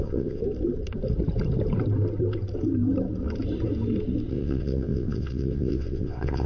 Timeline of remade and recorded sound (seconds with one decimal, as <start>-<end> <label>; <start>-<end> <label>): 0.0-0.4 remade; 0.4-4.3 recorded; 4.3-6.5 remade